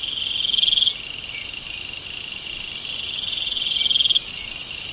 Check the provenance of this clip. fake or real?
real